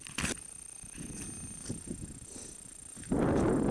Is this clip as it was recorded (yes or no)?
yes